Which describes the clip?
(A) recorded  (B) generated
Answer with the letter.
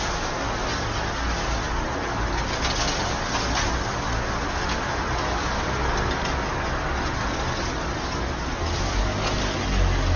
A